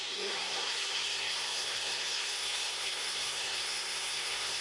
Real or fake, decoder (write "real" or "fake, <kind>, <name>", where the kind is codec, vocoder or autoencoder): fake, codec, SNAC